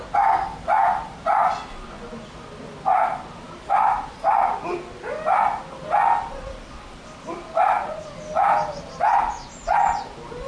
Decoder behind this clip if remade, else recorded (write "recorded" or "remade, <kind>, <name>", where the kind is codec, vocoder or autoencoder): recorded